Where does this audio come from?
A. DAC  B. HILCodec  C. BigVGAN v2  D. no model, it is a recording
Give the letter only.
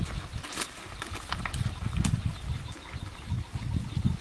D